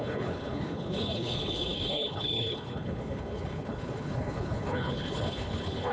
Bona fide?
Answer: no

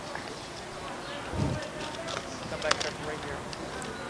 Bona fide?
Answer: yes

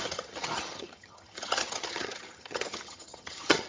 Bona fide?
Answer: no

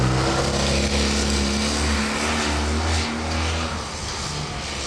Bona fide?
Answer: yes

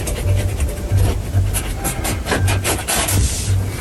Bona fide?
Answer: yes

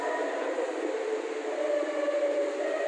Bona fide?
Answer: yes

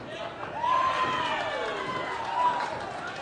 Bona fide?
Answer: yes